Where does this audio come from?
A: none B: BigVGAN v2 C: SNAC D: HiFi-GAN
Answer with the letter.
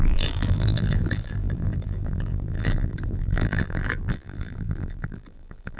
B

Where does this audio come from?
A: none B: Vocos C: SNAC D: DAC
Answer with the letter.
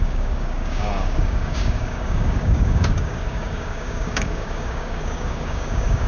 D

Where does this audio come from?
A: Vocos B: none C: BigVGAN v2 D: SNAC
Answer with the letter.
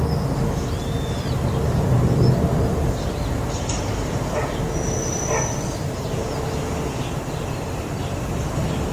B